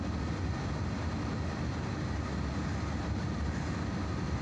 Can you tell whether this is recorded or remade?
recorded